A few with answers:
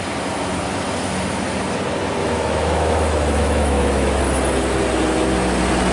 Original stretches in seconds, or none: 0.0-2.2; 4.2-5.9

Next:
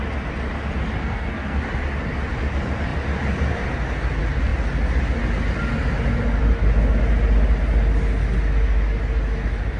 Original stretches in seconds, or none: 0.0-1.0; 1.6-9.8

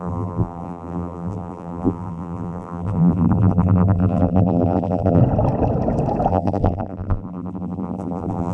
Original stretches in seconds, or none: 5.2-6.3

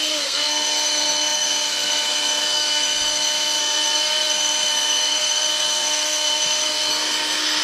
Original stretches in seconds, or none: none

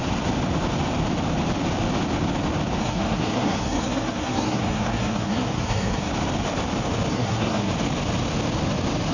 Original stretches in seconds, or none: 0.0-2.8; 6.1-7.1; 7.7-9.1

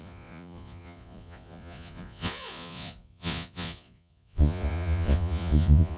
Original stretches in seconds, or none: none

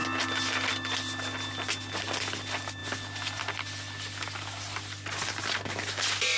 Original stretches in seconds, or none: 0.0-6.4

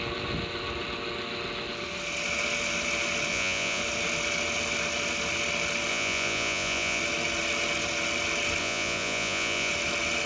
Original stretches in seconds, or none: 0.0-3.3; 3.8-5.9; 7.0-8.6; 9.7-10.3